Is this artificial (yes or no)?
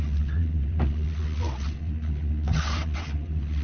yes